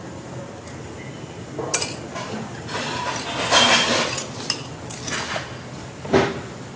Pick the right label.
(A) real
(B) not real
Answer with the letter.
A